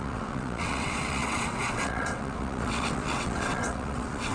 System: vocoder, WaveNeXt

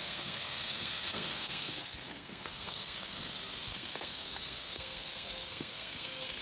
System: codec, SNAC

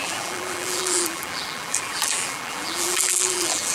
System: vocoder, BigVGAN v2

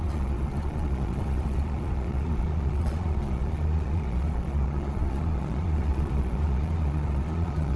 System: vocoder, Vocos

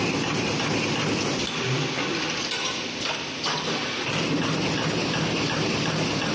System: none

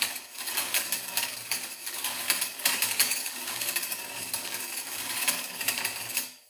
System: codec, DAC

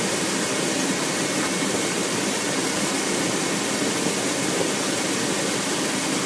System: none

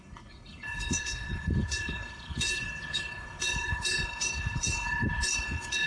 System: codec, HILCodec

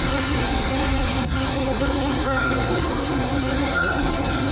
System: codec, SNAC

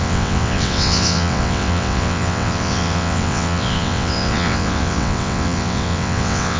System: vocoder, WaveNeXt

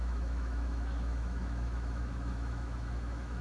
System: autoencoder, DAC-VAE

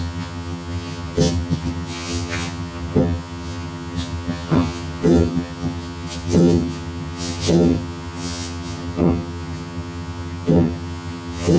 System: vocoder, HiFi-GAN